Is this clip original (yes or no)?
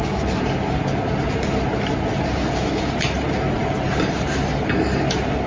yes